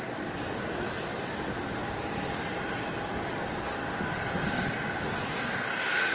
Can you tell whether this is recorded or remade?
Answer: recorded